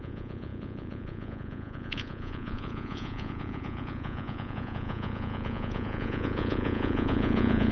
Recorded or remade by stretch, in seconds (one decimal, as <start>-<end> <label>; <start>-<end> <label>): 0.0-7.7 remade